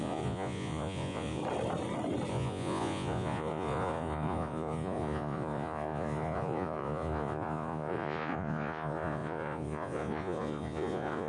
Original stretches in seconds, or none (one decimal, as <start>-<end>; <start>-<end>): 1.4-2.3